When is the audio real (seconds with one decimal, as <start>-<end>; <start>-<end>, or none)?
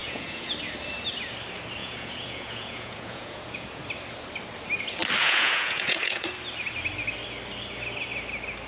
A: 0.5-1.8; 3.8-5.2; 6.3-8.7